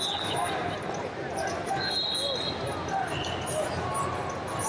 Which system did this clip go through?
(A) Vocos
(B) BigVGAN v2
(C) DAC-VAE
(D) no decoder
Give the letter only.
D